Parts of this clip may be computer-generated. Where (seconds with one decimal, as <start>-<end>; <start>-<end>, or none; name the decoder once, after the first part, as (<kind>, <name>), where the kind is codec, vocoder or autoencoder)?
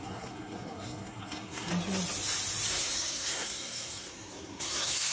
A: 0.0-1.7 (codec, SNAC); 2.7-5.1